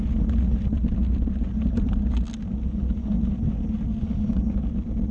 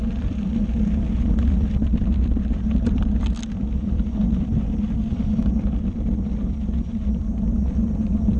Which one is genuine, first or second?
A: first